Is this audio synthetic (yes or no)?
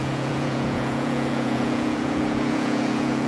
yes